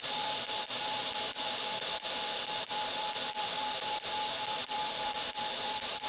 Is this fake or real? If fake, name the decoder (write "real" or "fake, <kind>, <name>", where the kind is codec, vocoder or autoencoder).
fake, vocoder, BigVGAN v2